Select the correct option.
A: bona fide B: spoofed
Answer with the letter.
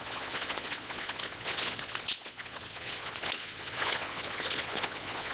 B